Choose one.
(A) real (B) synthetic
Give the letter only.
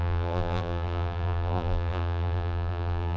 B